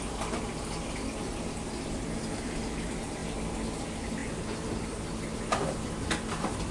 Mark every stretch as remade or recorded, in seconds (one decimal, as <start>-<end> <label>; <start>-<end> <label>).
0.0-6.7 recorded